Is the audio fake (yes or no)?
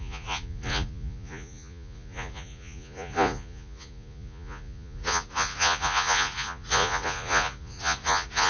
yes